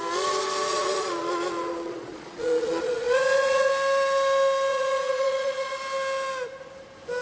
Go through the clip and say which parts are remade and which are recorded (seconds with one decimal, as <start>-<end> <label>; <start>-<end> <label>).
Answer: 0.0-0.7 recorded; 0.7-3.7 remade; 3.7-4.7 recorded; 4.7-5.8 remade; 5.8-7.2 recorded